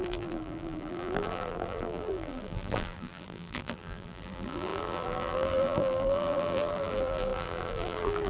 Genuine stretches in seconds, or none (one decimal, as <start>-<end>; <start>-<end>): none